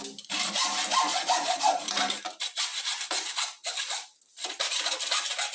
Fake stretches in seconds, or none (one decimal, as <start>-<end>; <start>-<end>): 1.1-1.8